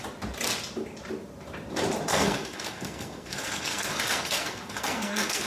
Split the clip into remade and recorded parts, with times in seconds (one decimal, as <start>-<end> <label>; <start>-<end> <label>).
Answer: 0.0-2.1 recorded; 2.1-5.5 remade